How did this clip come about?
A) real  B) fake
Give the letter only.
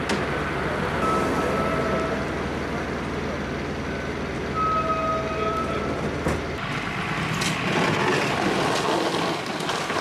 A